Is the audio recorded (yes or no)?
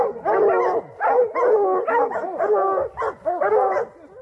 yes